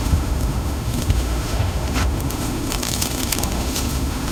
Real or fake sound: fake